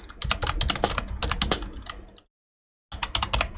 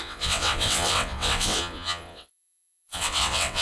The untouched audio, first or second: first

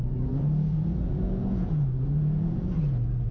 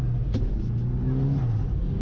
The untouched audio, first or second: second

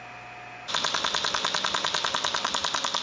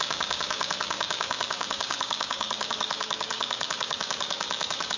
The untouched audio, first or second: first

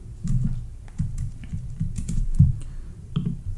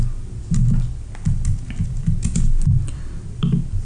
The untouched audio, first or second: second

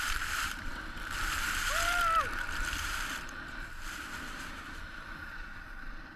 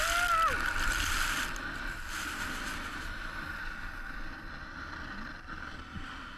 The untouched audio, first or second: second